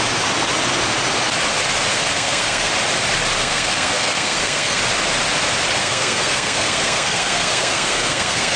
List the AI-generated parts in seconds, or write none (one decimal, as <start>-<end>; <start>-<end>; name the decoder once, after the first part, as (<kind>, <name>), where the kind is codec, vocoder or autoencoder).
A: 1.9-2.7 (codec, SNAC); 3.4-4.8; 5.8-8.6